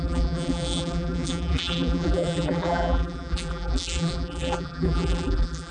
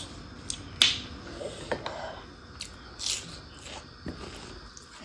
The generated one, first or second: first